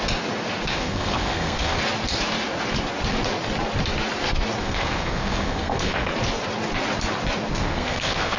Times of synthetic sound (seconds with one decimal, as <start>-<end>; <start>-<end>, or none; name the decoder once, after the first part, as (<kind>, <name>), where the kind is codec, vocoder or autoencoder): 0.7-1.8 (codec, SNAC); 4.6-6.1; 7.5-8.4